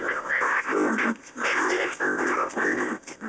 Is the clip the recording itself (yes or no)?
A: no